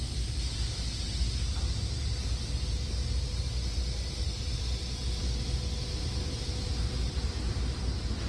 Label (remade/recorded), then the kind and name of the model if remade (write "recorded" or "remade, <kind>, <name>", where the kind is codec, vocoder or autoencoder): recorded